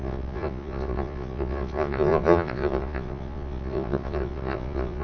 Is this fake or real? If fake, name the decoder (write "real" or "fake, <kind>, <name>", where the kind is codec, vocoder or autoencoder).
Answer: fake, vocoder, Vocos